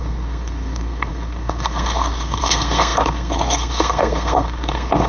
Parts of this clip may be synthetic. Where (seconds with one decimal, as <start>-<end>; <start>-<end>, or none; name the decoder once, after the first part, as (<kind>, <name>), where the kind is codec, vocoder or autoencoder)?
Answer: 0.0-5.1 (codec, SNAC)

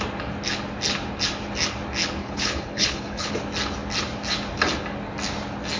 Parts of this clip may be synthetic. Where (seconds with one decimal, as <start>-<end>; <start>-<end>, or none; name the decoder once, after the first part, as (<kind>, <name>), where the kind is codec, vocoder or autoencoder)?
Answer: 2.2-3.3 (codec, HILCodec)

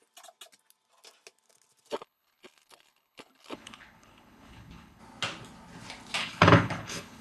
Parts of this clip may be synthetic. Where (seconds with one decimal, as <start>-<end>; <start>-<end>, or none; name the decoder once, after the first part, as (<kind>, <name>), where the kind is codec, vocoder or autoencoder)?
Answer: 1.9-5.0 (codec, HILCodec); 6.2-7.2

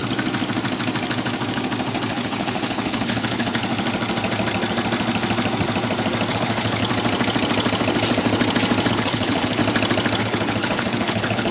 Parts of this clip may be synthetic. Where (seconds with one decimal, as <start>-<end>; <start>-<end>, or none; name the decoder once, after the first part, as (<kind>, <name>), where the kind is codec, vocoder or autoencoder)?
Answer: 2.1-3.6 (codec, HILCodec); 6.3-6.8; 8.9-9.6; 10.2-11.5

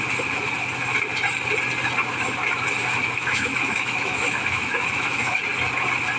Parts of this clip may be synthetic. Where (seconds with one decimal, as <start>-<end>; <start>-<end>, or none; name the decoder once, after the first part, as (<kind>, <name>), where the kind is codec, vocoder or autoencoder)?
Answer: 2.8-5.4 (autoencoder, DAC-VAE)

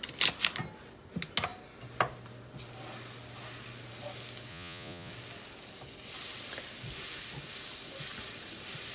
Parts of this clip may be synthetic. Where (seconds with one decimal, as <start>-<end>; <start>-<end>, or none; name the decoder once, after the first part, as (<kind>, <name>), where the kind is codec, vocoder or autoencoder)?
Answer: 4.5-5.1 (vocoder, Vocos)